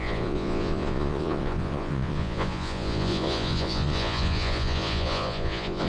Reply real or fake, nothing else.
fake